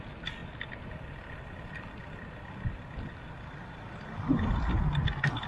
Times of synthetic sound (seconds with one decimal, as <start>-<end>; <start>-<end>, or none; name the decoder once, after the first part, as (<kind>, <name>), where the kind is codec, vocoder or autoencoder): none